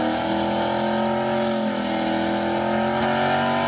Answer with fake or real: real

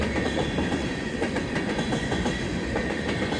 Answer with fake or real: fake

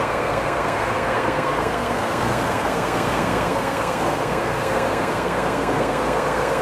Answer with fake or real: fake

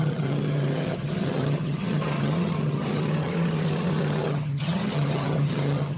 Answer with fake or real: fake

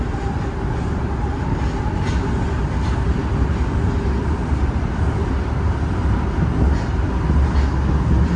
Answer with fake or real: real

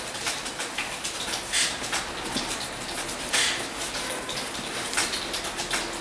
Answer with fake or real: real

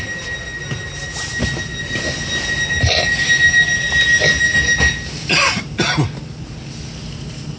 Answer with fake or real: real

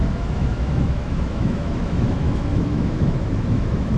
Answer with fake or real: fake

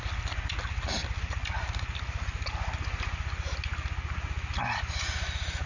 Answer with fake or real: real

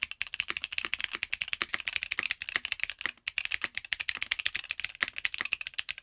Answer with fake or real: real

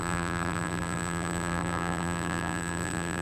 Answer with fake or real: fake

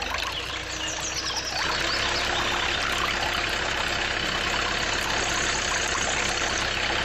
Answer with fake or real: real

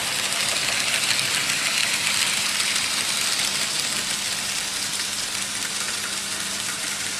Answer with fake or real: real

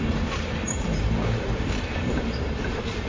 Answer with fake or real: fake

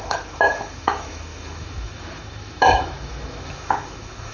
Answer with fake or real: fake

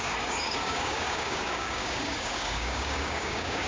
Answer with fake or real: fake